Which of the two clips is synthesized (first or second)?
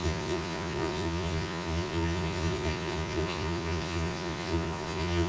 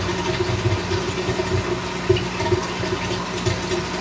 first